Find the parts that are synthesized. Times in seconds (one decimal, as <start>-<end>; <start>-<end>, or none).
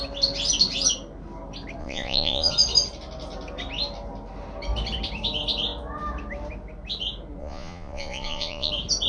1.8-2.5; 7.4-8.7